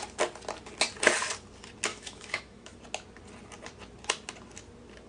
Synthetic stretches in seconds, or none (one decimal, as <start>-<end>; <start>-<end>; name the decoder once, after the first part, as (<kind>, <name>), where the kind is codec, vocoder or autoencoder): 1.9-2.8 (autoencoder, DAC-VAE)